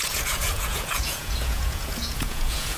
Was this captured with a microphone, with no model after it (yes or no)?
no